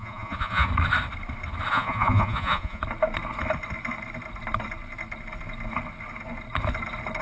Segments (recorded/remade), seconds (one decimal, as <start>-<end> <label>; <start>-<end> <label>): 0.0-0.7 remade; 0.7-1.7 recorded; 1.7-2.8 remade; 2.8-7.2 recorded